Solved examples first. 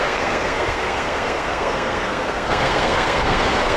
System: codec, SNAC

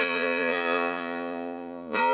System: vocoder, Vocos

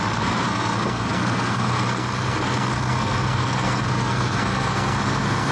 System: codec, SNAC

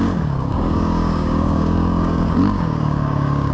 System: codec, DAC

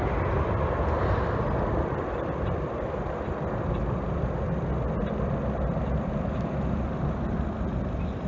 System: none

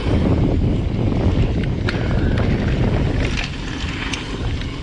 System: none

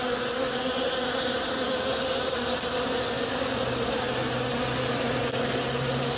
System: none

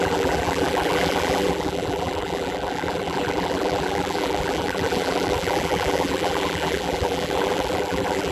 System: vocoder, BigVGAN v2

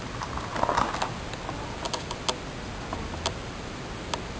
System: none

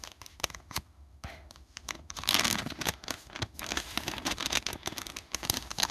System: autoencoder, DAC-VAE